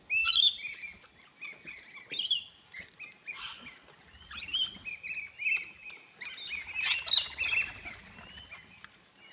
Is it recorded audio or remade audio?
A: recorded